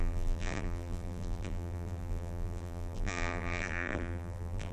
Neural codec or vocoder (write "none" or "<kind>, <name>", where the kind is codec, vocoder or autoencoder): vocoder, BigVGAN v2